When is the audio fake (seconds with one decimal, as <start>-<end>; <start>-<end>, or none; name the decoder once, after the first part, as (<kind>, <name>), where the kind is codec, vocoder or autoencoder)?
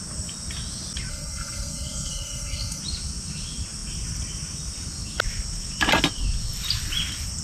1.1-2.8 (codec, SNAC)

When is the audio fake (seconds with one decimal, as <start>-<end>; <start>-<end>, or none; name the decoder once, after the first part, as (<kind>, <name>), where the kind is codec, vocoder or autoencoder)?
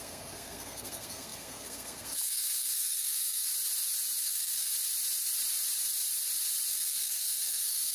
0.0-3.5 (codec, SNAC); 4.2-4.7; 6.7-7.9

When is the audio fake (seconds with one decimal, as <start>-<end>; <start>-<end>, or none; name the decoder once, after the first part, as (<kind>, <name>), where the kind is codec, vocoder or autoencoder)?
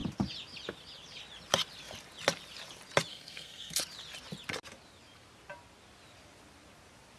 3.1-3.8 (codec, SNAC)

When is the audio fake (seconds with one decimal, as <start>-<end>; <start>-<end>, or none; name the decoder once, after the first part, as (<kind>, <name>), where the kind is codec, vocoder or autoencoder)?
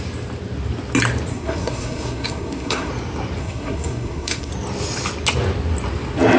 1.3-2.9 (codec, SNAC); 3.4-4.5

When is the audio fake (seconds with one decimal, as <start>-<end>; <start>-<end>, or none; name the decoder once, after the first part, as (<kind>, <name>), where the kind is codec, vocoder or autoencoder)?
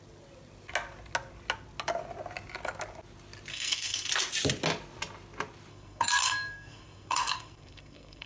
3.5-4.1 (codec, SNAC); 5.7-8.3